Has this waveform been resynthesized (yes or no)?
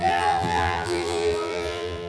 yes